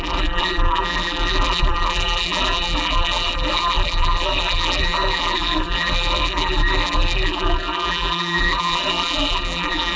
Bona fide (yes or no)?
no